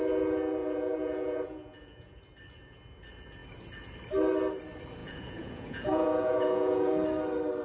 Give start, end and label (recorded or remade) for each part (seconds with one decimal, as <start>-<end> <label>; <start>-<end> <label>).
0.0-0.6 recorded; 0.6-2.2 remade; 2.2-5.0 recorded; 5.0-6.9 remade; 6.9-7.6 recorded